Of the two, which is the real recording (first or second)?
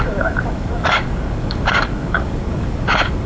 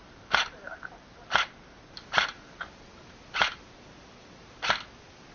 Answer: second